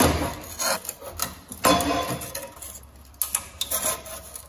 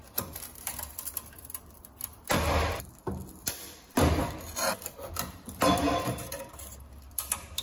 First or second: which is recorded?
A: first